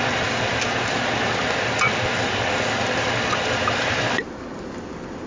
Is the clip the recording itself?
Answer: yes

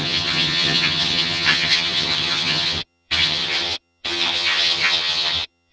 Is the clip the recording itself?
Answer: no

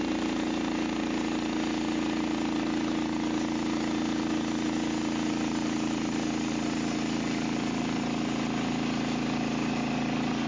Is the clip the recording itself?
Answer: yes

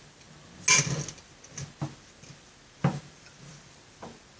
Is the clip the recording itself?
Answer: yes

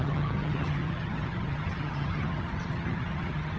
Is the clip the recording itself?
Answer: no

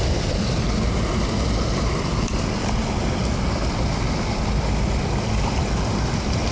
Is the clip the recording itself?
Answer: yes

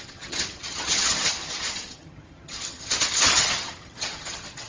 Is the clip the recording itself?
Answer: no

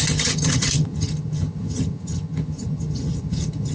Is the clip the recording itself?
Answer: no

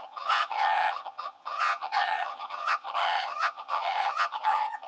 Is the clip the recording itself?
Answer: no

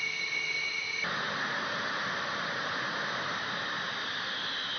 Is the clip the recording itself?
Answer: yes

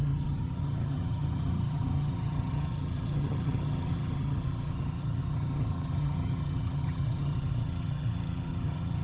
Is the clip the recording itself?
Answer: no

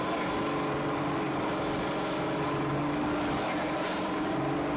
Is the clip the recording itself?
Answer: yes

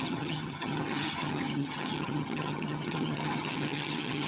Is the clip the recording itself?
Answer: no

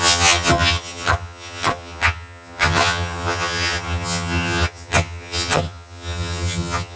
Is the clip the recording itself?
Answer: no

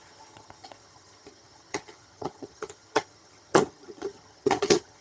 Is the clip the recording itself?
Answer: no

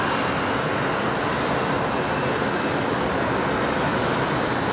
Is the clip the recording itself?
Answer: yes